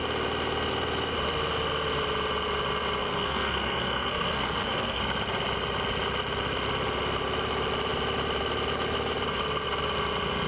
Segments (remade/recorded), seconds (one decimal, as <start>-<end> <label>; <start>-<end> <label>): 0.0-3.0 recorded; 3.0-5.0 remade; 5.0-10.5 recorded